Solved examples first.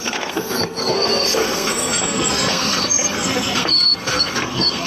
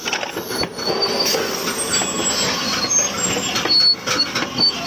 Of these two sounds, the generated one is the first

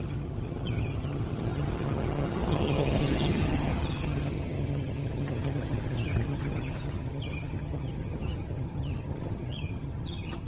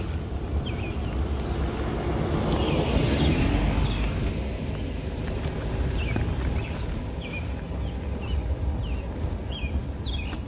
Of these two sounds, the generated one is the first